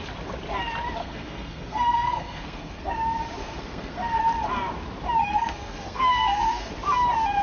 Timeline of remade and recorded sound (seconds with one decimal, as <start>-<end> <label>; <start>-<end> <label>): 0.0-1.0 recorded; 1.0-3.0 remade; 3.0-3.4 recorded; 3.4-4.2 remade; 4.2-5.2 recorded; 5.2-6.7 remade; 6.7-7.4 recorded